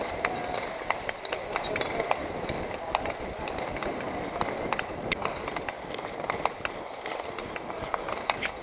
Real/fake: real